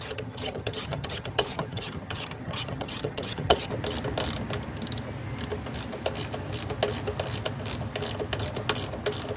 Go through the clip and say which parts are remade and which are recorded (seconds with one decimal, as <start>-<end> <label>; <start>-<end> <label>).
0.0-3.7 remade; 3.7-9.4 recorded